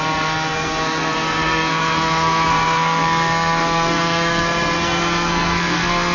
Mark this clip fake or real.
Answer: fake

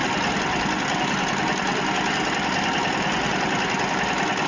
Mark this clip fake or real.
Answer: real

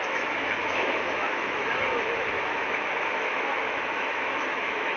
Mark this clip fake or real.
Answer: fake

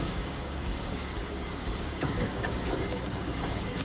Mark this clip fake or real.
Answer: fake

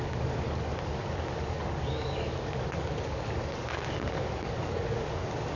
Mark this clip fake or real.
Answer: fake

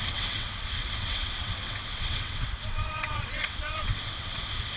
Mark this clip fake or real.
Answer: fake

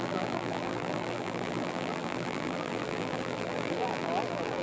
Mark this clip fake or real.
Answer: fake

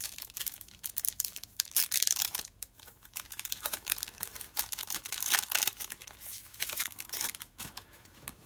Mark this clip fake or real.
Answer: fake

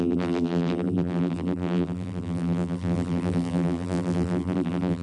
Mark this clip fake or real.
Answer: fake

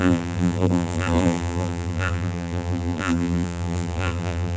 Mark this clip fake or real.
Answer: fake